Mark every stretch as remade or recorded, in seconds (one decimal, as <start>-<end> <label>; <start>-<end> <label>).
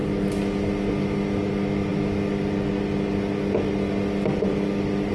0.0-5.1 recorded